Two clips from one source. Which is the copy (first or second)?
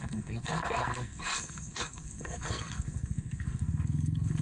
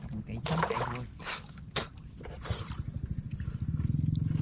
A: first